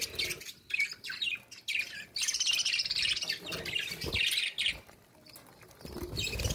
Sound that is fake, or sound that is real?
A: real